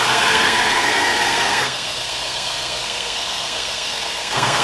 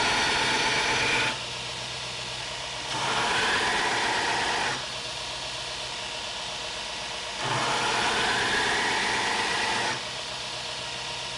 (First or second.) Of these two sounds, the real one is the second